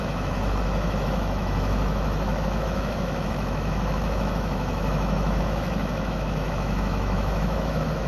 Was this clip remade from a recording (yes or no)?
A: yes